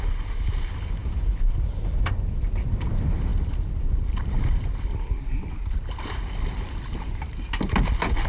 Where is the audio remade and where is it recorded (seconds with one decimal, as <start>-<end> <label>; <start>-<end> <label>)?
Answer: 0.0-8.3 recorded